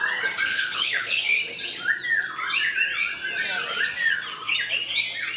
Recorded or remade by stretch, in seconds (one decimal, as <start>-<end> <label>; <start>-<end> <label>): 0.0-0.5 recorded; 0.5-1.4 remade; 1.4-5.4 recorded